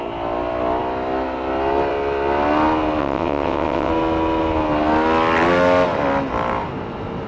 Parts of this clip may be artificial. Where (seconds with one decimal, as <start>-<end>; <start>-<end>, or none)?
3.0-3.9